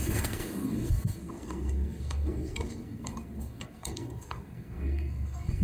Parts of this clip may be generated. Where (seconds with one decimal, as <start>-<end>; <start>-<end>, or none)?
0.0-5.6